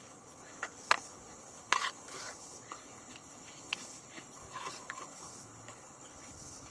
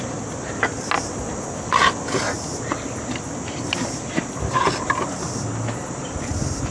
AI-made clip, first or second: first